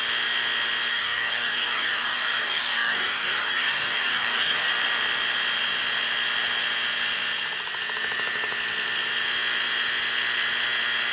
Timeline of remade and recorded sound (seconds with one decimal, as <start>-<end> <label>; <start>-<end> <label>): 0.0-0.9 recorded; 0.9-4.7 remade; 4.7-11.1 recorded